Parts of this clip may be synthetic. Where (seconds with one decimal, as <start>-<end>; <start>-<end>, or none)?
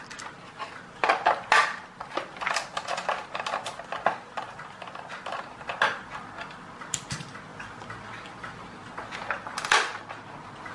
none